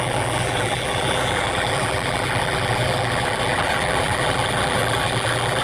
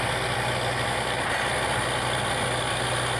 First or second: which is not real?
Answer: first